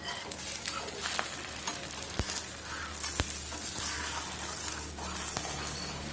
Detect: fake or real real